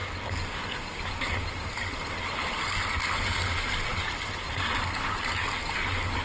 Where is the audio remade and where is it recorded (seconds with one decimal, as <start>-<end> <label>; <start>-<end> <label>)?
0.0-6.2 recorded